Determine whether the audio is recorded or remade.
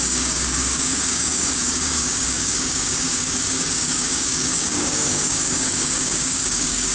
remade